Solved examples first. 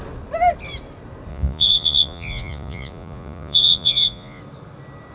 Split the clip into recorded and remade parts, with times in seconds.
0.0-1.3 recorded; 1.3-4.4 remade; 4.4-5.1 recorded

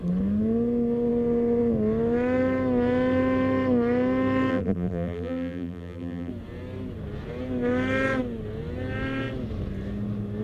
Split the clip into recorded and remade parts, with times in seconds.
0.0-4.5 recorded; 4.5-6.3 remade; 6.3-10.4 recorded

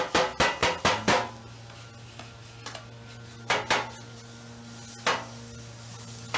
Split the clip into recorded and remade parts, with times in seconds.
0.0-6.4 recorded